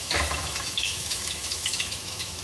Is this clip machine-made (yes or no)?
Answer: yes